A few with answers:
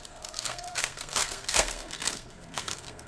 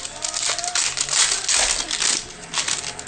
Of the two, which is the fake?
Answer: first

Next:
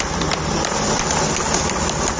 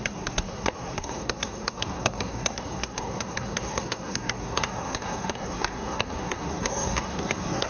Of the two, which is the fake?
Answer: second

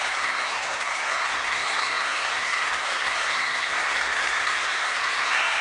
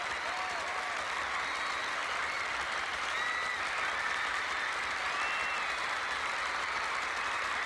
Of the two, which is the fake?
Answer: first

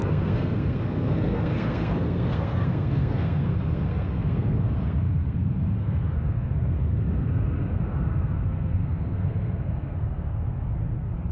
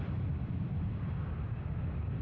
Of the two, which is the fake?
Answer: first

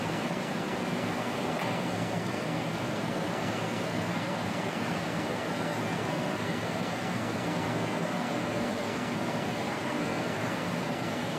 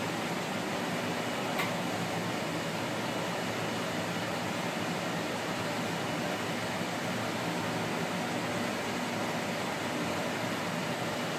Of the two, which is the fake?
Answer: first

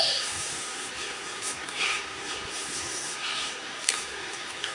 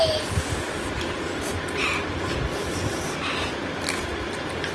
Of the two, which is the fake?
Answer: first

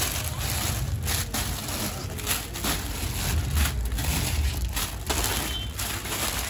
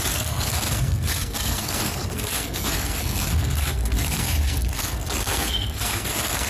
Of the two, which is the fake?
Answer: second